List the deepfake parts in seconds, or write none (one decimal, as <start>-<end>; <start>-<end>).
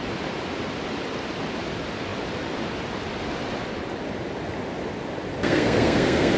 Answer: 5.3-6.4